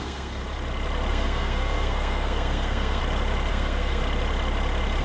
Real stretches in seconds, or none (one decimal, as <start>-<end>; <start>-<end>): 0.4-1.1; 3.0-3.5; 4.0-5.0